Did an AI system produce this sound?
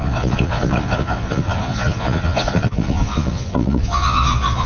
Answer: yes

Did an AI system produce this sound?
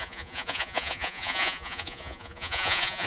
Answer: yes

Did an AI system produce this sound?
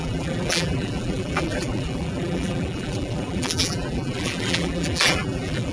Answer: yes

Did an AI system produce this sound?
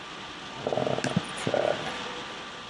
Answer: no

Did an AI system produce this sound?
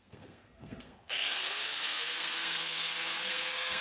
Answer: yes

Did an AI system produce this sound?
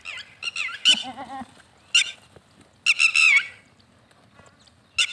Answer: no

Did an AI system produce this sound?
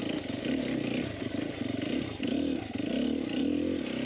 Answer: no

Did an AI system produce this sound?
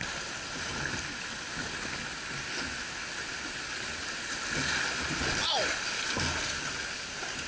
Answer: no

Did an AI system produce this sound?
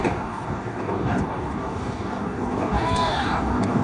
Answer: yes